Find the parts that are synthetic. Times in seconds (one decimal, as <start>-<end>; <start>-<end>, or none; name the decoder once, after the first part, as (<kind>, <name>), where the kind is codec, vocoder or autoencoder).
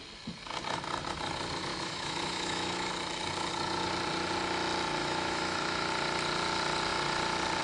1.7-2.9 (autoencoder, DAC-VAE); 5.0-5.9